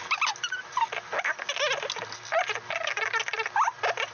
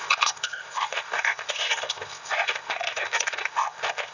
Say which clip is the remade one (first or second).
second